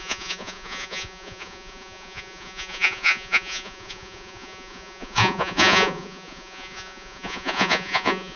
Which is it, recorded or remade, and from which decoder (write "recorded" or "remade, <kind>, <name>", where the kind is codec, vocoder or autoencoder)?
remade, vocoder, Vocos